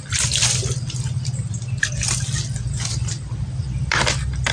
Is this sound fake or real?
real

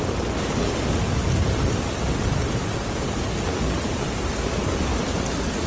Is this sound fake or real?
real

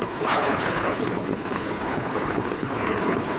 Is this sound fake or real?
fake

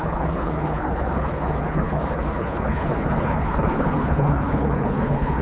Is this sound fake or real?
fake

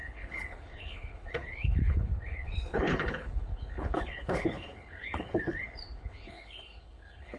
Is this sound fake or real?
fake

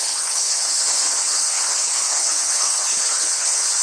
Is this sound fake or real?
fake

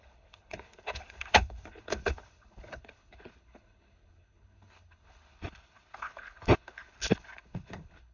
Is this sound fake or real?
fake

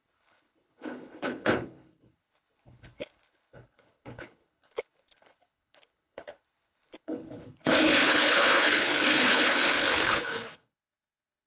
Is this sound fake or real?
fake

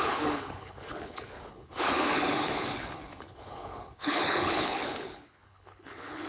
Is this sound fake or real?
fake